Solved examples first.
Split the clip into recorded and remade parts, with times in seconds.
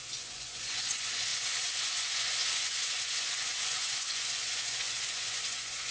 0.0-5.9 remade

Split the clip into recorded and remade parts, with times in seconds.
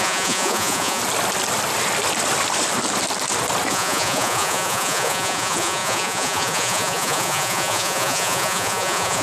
0.0-1.0 remade; 1.0-3.7 recorded; 3.7-9.2 remade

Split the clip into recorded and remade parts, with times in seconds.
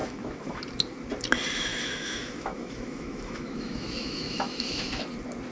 0.0-0.6 remade; 0.6-1.7 recorded; 1.7-5.0 remade; 5.0-5.5 recorded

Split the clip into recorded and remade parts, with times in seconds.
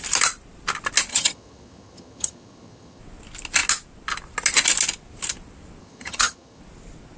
0.0-1.1 recorded; 1.1-3.0 remade; 3.0-5.8 recorded; 5.8-6.6 remade; 6.6-7.2 recorded